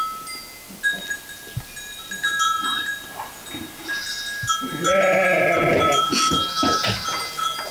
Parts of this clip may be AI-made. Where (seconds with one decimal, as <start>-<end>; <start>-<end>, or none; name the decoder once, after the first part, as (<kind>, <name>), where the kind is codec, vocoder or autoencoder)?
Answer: none